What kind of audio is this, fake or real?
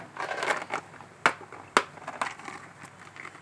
real